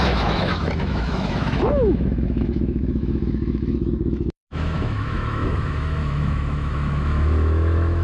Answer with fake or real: fake